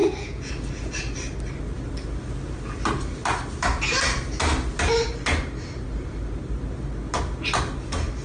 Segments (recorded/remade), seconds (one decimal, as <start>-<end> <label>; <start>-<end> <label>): 0.0-0.5 remade; 0.5-8.2 recorded